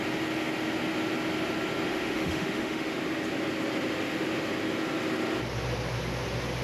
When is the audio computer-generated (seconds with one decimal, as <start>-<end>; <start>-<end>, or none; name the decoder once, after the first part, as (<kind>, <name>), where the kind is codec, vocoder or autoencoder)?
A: 1.9-3.0 (autoencoder, DAC-VAE)